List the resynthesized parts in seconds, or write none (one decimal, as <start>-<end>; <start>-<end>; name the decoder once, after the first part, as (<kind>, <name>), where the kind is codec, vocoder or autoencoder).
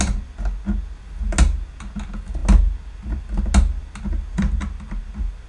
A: none